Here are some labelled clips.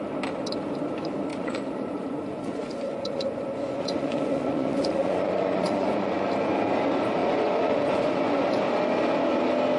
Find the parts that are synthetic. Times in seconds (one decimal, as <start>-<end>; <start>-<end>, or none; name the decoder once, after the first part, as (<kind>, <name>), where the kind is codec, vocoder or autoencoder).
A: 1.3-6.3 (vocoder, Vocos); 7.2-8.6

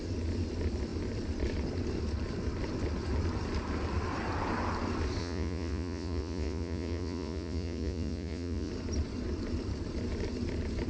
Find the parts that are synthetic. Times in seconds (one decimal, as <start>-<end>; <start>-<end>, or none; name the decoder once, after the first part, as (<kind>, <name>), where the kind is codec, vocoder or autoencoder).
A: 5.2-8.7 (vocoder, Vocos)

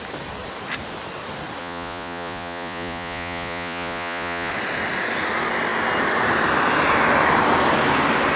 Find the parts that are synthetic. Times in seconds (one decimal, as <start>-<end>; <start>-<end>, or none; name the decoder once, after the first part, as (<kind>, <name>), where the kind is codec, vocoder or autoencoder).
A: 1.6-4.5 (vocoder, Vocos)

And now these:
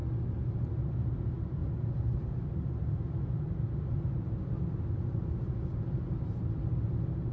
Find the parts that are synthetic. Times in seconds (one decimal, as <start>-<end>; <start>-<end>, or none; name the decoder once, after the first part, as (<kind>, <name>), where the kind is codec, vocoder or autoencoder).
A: none